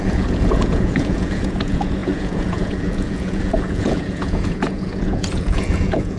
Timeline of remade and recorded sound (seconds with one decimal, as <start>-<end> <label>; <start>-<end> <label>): 0.0-6.2 remade